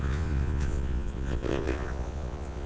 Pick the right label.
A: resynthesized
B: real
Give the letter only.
A